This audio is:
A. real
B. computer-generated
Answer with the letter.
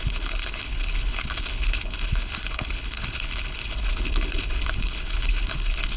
B